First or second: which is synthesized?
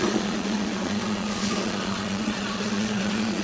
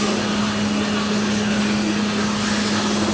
first